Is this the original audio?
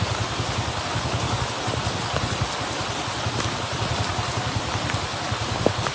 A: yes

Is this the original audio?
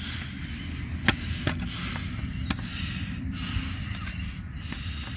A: yes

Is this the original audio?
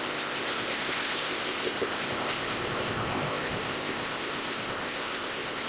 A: no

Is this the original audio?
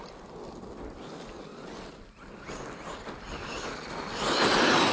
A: yes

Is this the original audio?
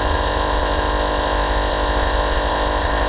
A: no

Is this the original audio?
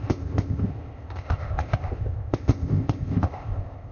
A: no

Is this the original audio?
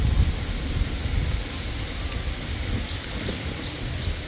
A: yes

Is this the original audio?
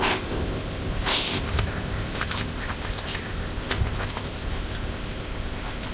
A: no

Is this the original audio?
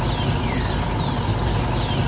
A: yes